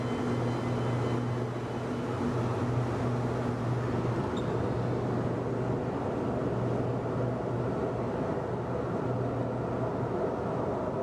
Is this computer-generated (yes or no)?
no